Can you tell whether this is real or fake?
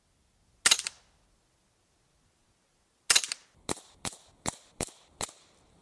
real